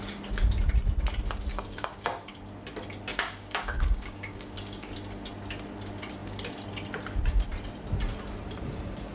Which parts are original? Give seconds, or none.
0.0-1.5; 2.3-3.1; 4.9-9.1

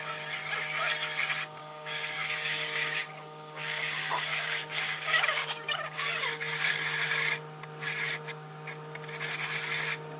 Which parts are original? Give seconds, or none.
0.0-1.6; 6.7-10.2

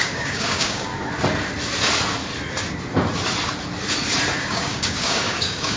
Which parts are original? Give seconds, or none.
0.9-4.4

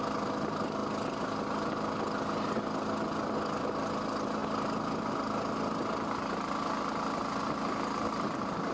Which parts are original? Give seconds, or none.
0.0-8.7

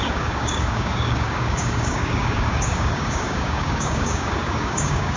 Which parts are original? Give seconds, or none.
none

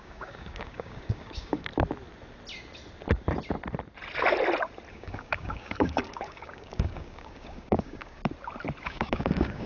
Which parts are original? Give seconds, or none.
1.7-4.9; 8.2-8.8